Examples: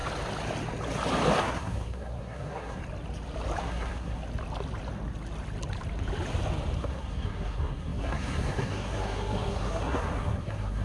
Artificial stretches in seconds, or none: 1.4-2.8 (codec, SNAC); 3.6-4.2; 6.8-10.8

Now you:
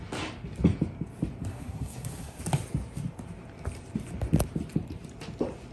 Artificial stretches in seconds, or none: 1.5-2.4 (codec, SNAC)

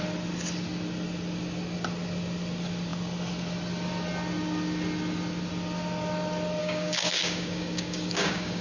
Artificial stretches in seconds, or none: 6.6-8.6 (codec, DAC)

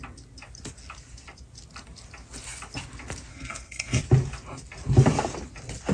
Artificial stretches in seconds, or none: 3.3-4.0 (codec, SNAC)

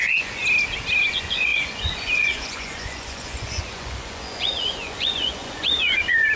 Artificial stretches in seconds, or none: 0.0-0.4 (vocoder, Vocos); 1.1-6.4

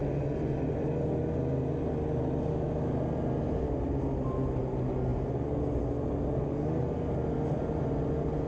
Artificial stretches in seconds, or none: none

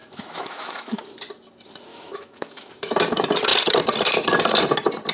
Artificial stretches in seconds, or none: 0.0-1.0 (autoencoder, DAC-VAE); 1.9-2.7